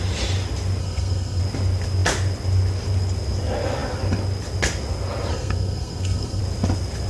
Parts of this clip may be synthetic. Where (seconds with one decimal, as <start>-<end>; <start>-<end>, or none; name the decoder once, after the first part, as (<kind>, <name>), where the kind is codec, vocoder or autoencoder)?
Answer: 0.8-1.4 (codec, SNAC); 5.3-6.4

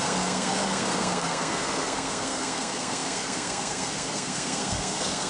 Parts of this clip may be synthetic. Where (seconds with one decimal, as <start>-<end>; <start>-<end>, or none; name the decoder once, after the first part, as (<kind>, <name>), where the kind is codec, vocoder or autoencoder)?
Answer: 0.0-5.3 (codec, SNAC)